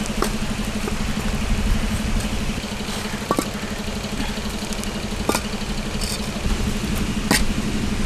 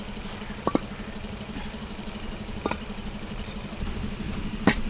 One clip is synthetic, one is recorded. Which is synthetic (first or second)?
second